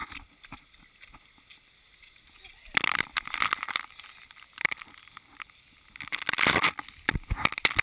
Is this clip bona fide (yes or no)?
yes